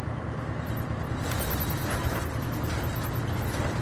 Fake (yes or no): no